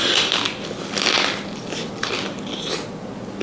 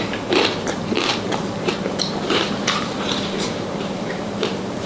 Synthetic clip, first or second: second